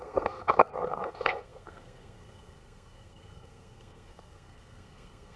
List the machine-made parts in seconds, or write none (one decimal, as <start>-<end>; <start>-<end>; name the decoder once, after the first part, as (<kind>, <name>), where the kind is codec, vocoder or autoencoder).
0.0-5.4 (codec, SNAC)